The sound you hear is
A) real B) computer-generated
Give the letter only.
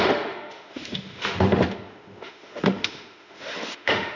B